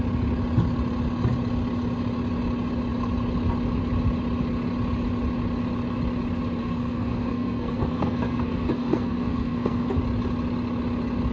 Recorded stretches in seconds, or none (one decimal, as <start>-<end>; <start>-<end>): 0.0-6.6; 10.0-11.3